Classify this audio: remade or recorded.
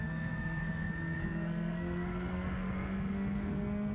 remade